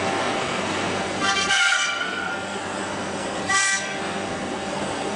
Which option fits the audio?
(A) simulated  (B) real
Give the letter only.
A